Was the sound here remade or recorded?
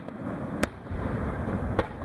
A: remade